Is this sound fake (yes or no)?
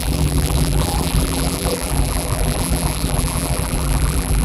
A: yes